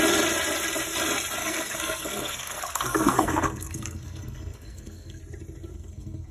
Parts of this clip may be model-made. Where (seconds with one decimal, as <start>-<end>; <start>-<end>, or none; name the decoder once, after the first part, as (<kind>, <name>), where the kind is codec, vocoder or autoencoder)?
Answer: 1.4-5.2 (codec, SNAC); 5.7-6.3